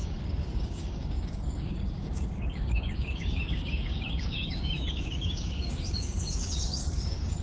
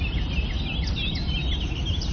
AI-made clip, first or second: first